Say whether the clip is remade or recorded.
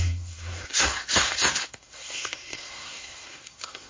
remade